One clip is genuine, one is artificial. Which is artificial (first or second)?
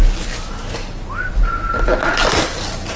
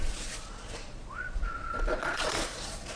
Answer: second